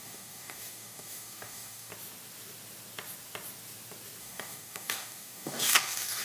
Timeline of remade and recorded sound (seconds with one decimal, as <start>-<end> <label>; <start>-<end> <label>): 0.0-1.9 remade; 1.9-4.2 recorded; 4.2-6.2 remade